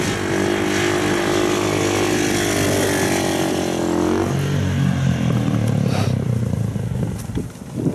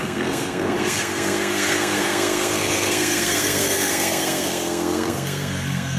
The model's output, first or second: second